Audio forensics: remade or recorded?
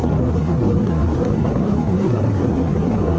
remade